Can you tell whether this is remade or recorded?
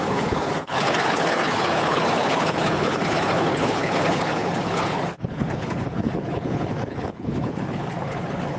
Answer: remade